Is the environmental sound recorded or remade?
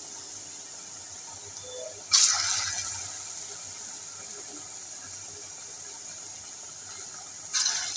recorded